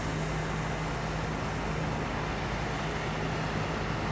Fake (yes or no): no